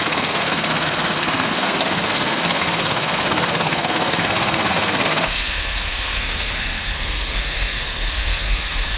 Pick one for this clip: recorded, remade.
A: remade